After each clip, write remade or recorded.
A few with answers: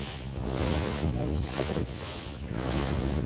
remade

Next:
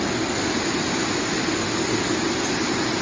recorded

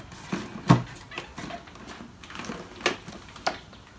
recorded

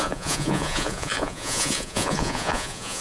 remade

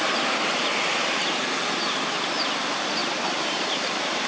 recorded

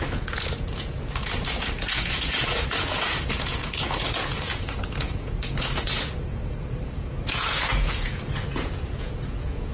remade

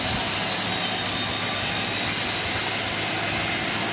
recorded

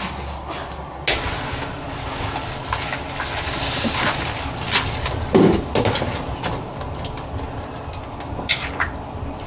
recorded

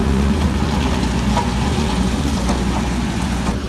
remade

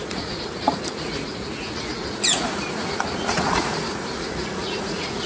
remade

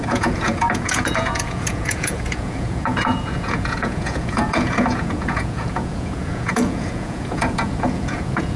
remade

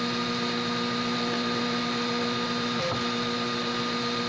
recorded